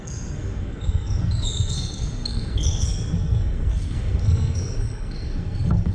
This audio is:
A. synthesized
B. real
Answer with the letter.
A